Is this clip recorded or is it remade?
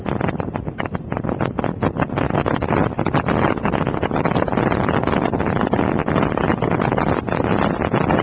recorded